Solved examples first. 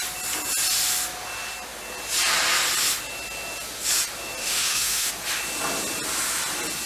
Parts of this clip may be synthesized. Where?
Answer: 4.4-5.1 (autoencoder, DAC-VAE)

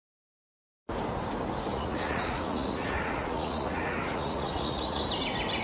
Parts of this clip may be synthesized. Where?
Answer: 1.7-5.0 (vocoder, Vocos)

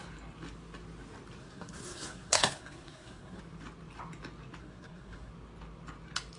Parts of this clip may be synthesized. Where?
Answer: 1.4-3.4 (codec, SNAC); 4.6-5.3

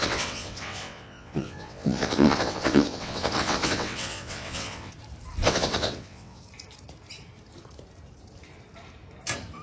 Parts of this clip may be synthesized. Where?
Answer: 0.0-4.9 (vocoder, WaveNeXt); 5.4-6.4

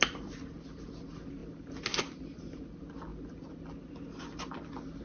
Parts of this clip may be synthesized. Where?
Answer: none

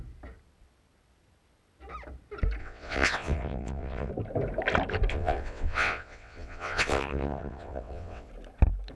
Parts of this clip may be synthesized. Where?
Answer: 2.6-4.1 (vocoder, WaveNeXt); 5.1-8.3

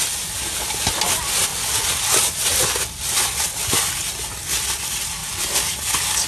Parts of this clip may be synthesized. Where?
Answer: none

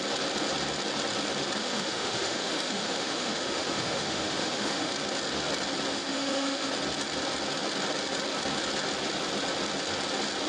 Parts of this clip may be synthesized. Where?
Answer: 1.6-4.9 (autoencoder, DAC-VAE); 5.9-6.7